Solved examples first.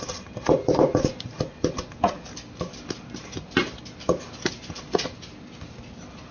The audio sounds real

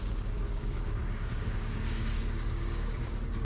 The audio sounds fake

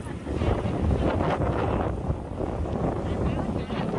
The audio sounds real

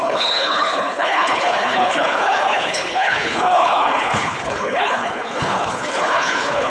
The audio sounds fake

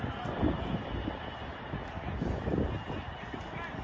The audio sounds real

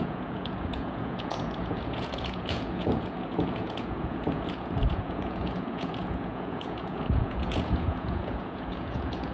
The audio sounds fake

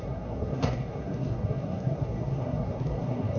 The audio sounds fake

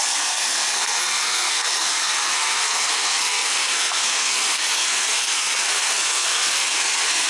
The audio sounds fake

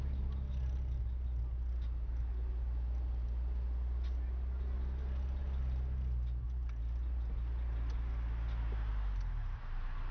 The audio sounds real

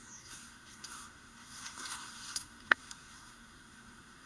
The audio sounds fake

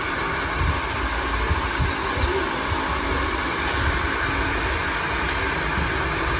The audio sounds real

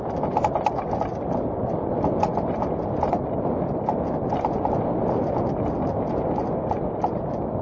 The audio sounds real